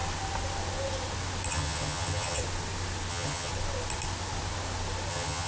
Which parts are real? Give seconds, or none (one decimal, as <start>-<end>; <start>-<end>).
0.0-1.5; 2.4-3.1; 3.5-5.1